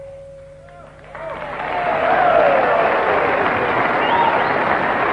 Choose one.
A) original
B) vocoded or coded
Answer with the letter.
A